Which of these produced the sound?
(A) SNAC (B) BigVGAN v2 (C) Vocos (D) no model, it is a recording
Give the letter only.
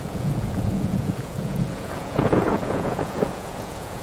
C